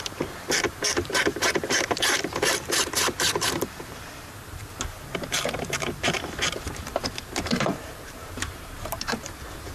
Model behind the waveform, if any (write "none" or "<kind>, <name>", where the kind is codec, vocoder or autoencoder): vocoder, BigVGAN v2